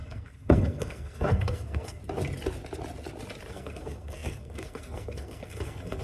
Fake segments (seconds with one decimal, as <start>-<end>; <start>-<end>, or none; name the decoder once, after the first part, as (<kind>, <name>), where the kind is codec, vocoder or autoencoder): 0.0-2.0 (codec, SNAC); 3.5-6.0